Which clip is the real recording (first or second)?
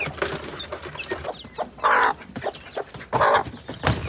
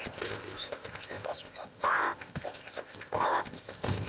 first